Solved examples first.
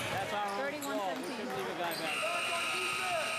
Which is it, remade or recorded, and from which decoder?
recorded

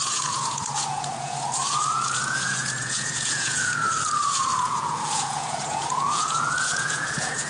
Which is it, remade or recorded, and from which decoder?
remade, vocoder, Vocos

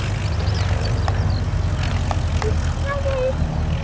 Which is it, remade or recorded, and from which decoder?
recorded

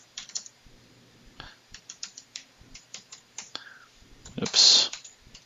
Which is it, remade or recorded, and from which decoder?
remade, vocoder, BigVGAN v2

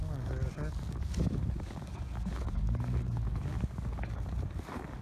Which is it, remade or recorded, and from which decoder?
remade, codec, DAC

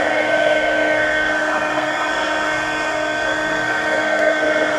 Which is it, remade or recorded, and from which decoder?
remade, codec, SNAC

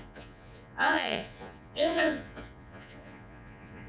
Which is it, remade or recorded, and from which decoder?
remade, vocoder, Vocos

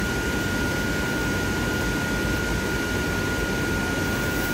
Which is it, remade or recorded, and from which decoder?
recorded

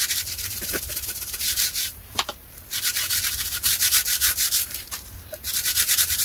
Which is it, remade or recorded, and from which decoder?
remade, vocoder, BigVGAN v2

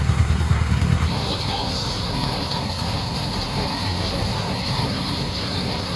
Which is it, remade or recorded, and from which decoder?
remade, codec, SNAC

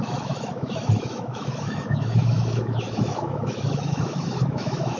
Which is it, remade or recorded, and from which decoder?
remade, autoencoder, DAC-VAE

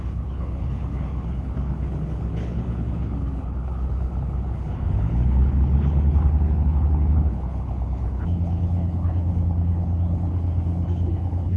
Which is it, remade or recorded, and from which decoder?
remade, codec, HILCodec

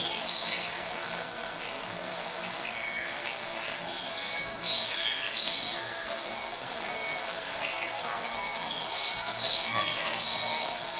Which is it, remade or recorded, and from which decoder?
remade, codec, SNAC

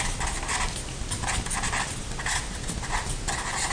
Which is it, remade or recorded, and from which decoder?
recorded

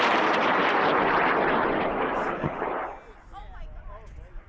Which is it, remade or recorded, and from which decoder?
recorded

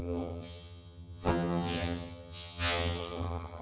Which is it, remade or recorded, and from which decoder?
remade, vocoder, HiFi-GAN